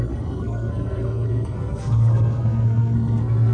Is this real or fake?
fake